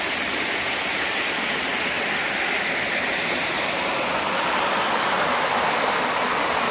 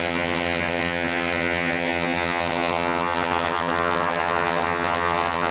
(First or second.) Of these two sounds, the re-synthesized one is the second